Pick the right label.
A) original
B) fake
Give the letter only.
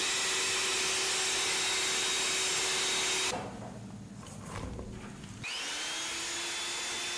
A